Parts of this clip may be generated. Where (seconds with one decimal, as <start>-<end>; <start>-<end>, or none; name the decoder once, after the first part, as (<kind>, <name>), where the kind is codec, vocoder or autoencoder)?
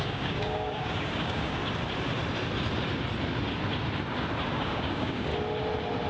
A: 0.0-1.6 (codec, DAC); 4.5-5.3